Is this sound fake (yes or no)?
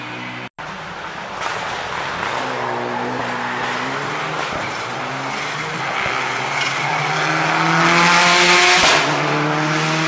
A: no